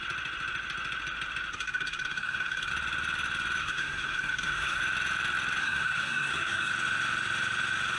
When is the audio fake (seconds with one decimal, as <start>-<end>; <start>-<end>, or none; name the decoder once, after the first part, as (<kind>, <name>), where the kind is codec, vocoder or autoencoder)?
1.5-2.7 (codec, SNAC); 3.6-4.8; 5.6-6.7